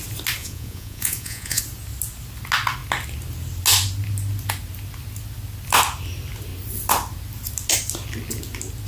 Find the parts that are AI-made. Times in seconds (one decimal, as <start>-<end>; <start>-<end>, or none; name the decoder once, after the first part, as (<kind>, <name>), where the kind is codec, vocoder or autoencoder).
0.4-1.6 (vocoder, Vocos)